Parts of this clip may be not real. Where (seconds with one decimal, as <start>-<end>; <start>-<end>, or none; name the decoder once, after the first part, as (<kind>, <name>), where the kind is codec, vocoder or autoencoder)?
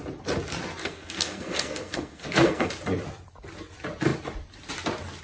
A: 0.8-2.7 (codec, SNAC)